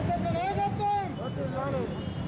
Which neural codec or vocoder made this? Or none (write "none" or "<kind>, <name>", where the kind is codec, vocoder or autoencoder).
none